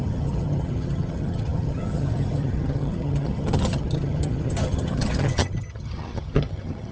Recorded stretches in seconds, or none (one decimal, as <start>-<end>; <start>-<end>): none